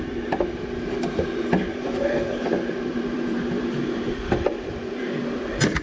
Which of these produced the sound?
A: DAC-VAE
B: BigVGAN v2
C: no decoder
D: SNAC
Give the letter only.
B